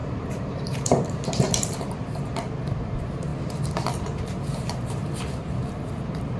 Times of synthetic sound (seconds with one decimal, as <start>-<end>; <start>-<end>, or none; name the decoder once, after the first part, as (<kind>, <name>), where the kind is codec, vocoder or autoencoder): 0.0-5.0 (vocoder, BigVGAN v2); 5.5-6.4